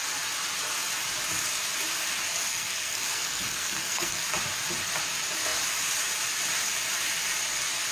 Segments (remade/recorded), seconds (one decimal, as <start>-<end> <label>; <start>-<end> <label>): 0.0-2.5 recorded; 2.5-4.2 remade; 4.2-7.9 recorded

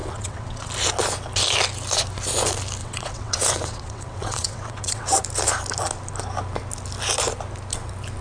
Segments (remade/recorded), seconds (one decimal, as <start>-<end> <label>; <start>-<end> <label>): 0.0-0.7 remade; 0.7-2.8 recorded; 2.8-5.2 remade; 5.2-8.2 recorded

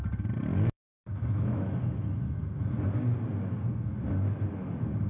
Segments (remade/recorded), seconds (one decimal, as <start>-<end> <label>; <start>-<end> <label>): 0.0-0.5 recorded; 0.5-2.4 remade; 2.4-5.1 recorded

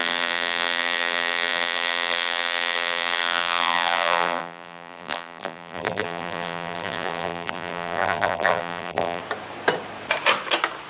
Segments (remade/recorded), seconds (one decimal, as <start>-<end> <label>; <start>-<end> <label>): 0.0-9.2 remade; 9.2-10.9 recorded

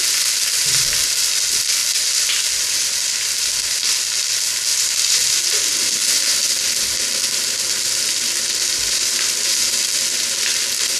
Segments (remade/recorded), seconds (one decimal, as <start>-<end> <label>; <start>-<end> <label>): 0.0-0.6 recorded; 0.6-1.3 remade; 1.3-4.7 recorded; 4.7-5.7 remade; 5.7-11.0 recorded

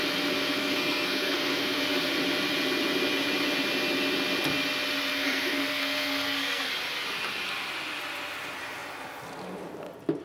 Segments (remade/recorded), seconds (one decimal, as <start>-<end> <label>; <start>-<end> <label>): 0.0-0.6 recorded; 0.6-2.1 remade; 2.1-5.1 recorded; 5.1-6.7 remade; 6.7-10.2 recorded

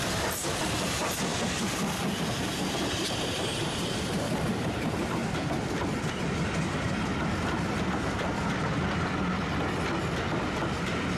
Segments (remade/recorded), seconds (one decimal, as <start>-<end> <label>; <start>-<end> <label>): 0.0-1.3 remade; 1.3-2.4 recorded; 2.4-5.2 remade; 5.2-6.1 recorded; 6.1-7.1 remade; 7.1-11.2 recorded